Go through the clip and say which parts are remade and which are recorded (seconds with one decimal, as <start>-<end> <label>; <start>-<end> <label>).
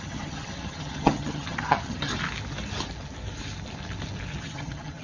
0.0-2.1 remade; 2.1-4.4 recorded; 4.4-5.0 remade